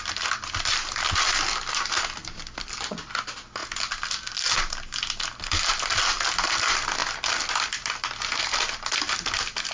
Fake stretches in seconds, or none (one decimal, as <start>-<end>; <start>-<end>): none